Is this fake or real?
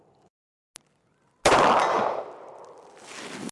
real